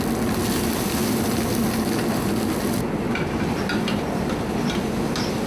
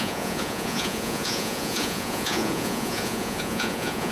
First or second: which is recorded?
first